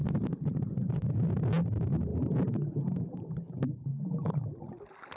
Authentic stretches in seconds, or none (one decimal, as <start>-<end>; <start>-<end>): 2.1-3.1; 3.9-5.2